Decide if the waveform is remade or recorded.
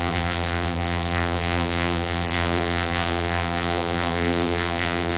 remade